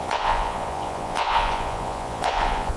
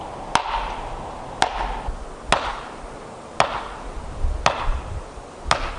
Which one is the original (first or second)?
second